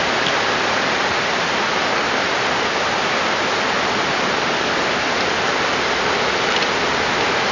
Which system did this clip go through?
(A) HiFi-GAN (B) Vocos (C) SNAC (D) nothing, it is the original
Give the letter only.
D